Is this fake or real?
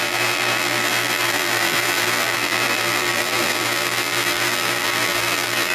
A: fake